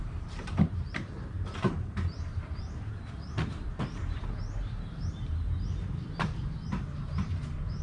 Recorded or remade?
remade